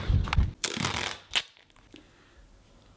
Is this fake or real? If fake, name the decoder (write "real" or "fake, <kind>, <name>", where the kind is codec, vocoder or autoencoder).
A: real